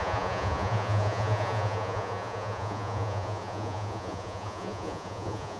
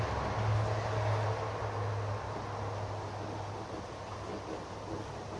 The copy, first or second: first